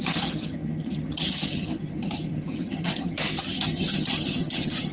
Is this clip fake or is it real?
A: fake